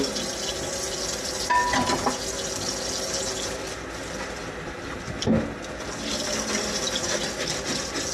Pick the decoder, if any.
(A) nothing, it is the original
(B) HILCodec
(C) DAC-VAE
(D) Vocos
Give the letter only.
A